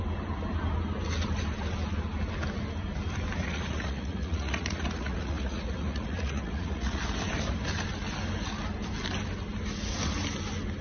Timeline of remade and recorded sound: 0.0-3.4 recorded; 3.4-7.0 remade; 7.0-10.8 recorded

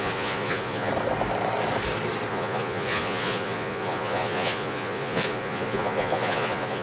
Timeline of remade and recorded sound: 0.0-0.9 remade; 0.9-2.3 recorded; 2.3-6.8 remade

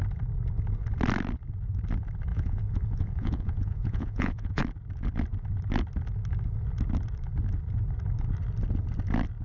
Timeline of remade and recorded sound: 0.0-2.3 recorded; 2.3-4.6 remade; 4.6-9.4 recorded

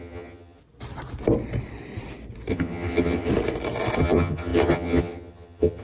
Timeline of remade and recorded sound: 0.0-0.6 remade; 0.6-2.5 recorded; 2.5-3.3 remade; 3.3-4.0 recorded; 4.0-5.8 remade

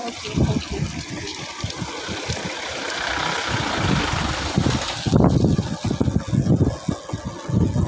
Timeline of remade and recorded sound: 0.0-1.3 recorded; 1.3-5.1 remade; 5.1-7.9 recorded

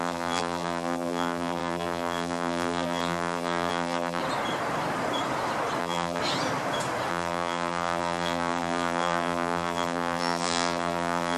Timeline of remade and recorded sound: 0.0-4.2 remade; 4.2-5.8 recorded; 5.8-6.2 remade; 6.2-7.1 recorded; 7.1-11.4 remade